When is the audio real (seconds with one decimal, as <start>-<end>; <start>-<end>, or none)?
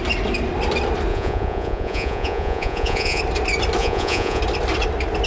0.0-1.1; 3.2-3.8; 4.4-5.3